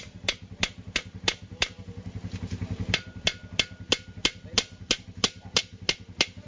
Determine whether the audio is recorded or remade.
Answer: recorded